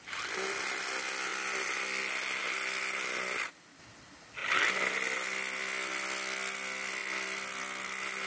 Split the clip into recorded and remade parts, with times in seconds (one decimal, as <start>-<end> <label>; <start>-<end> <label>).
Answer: 0.0-8.3 recorded